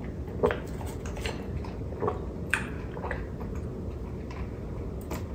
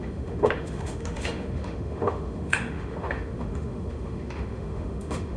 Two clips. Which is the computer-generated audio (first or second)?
second